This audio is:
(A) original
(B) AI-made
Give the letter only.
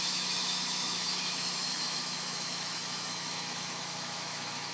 B